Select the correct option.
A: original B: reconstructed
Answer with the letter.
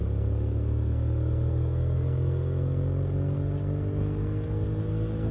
B